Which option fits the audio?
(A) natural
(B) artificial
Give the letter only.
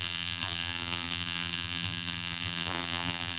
B